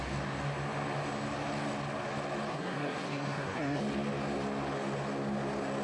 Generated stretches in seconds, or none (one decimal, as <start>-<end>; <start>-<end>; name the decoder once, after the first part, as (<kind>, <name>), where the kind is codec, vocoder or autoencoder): 2.5-3.8 (codec, SNAC)